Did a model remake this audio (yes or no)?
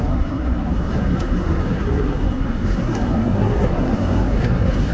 yes